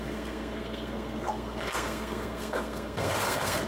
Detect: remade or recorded remade